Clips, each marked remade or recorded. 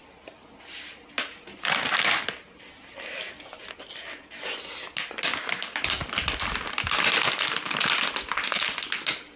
recorded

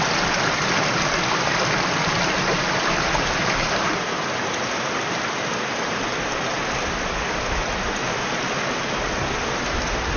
recorded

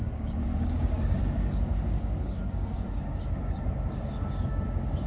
remade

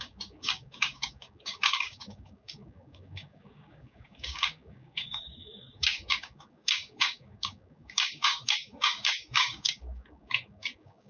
remade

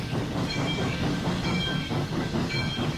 remade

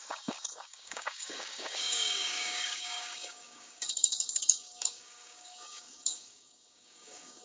remade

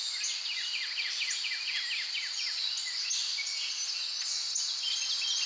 recorded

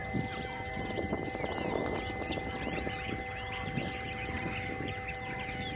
recorded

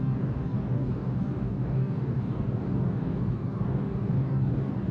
remade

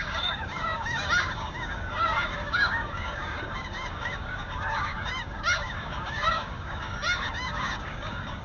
remade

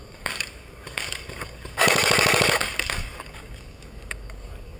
remade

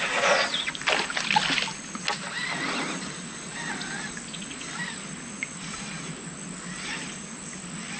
recorded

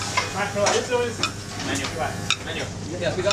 recorded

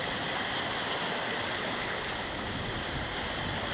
recorded